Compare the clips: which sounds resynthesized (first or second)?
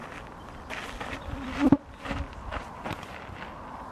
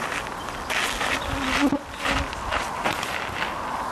first